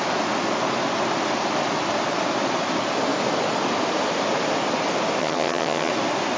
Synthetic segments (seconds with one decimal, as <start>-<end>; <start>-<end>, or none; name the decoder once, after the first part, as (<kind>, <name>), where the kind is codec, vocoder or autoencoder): 5.2-5.9 (vocoder, HiFi-GAN)